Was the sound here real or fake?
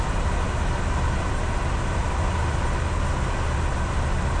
real